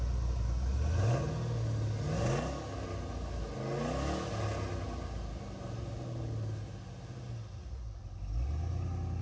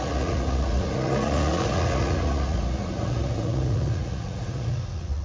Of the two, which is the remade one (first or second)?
second